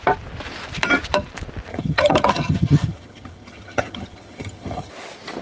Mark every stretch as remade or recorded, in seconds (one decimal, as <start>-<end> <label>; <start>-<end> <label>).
0.0-1.7 recorded; 1.7-4.9 remade; 4.9-5.4 recorded